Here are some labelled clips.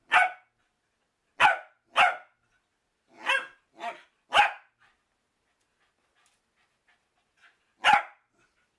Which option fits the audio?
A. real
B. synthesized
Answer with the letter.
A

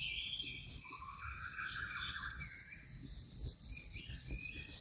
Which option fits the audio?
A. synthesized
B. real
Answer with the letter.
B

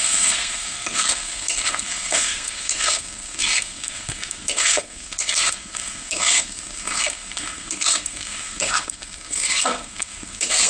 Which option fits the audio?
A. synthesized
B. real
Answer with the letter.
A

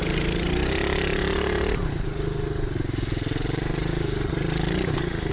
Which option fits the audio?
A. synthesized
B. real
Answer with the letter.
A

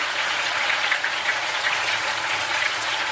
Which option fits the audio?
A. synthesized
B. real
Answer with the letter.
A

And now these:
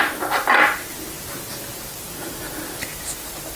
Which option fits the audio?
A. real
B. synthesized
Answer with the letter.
A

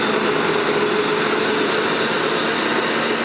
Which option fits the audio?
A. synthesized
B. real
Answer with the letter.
B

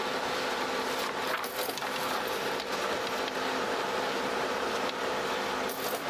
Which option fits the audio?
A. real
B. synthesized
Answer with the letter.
A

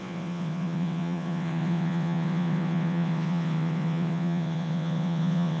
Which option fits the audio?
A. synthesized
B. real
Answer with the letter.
A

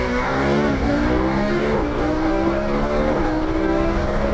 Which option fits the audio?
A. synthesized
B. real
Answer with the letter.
A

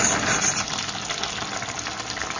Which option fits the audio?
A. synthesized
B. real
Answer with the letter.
B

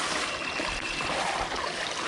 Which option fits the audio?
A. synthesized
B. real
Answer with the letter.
A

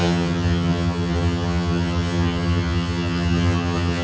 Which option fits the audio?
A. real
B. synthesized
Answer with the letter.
B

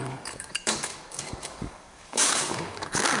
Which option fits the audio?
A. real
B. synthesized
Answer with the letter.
B